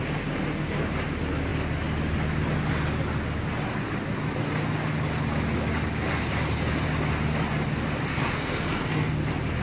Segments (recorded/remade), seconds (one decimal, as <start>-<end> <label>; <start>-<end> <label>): 0.0-8.1 recorded; 8.1-9.1 remade; 9.1-9.6 recorded